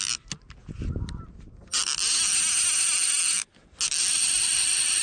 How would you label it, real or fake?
real